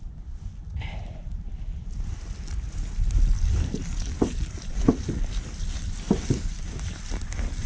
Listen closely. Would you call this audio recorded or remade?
recorded